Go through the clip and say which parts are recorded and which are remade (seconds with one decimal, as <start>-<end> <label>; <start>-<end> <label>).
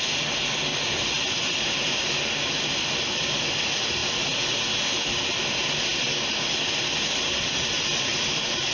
0.0-0.7 recorded; 0.7-2.2 remade; 2.2-8.1 recorded; 8.1-8.7 remade